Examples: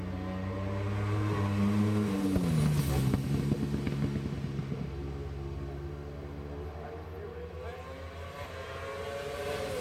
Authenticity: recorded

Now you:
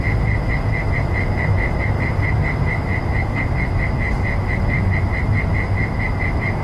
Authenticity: remade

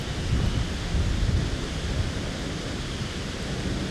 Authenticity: recorded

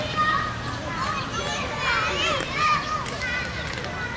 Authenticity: recorded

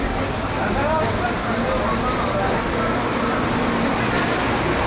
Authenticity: recorded